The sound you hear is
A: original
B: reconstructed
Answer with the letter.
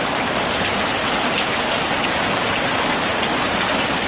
A